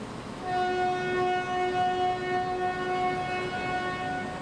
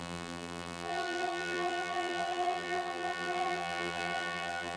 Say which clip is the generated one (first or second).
second